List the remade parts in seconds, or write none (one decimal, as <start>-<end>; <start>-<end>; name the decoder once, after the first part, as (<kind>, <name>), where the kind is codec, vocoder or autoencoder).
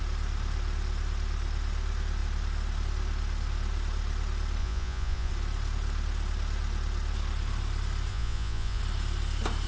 4.6-5.3 (vocoder, Vocos); 8.1-8.8